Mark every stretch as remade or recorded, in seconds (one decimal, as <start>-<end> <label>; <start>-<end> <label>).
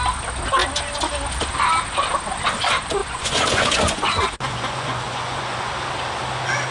0.0-3.0 recorded; 3.0-5.7 remade; 5.7-6.7 recorded